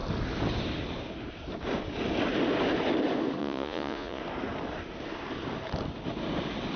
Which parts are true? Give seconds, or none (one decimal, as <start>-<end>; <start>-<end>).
0.0-3.4; 4.2-6.8

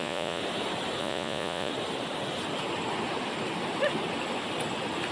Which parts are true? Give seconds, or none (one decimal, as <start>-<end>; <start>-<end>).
0.4-1.0; 1.7-5.1

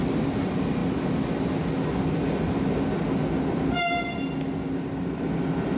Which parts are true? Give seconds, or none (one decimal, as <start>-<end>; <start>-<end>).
0.0-5.8

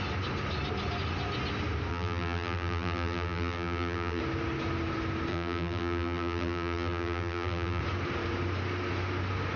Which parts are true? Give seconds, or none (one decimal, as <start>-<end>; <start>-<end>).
0.0-1.9; 4.2-5.3; 7.8-9.6

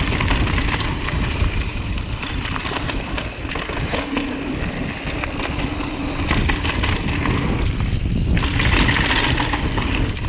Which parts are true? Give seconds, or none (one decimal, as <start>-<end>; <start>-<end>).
0.0-1.7; 3.4-10.3